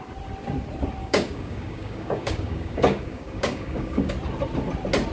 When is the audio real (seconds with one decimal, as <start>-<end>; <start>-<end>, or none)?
0.0-1.0; 4.1-5.1